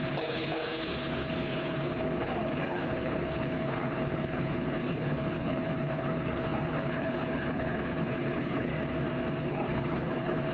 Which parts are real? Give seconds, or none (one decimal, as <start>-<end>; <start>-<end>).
8.7-9.4